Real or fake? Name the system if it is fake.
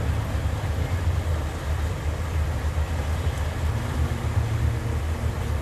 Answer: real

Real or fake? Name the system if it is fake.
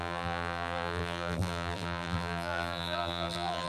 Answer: fake, vocoder, BigVGAN v2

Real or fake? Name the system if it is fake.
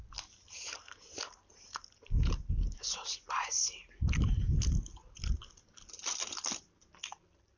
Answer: real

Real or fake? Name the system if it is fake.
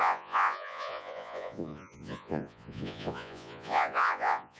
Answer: fake, vocoder, Vocos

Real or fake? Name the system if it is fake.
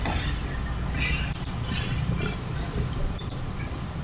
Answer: real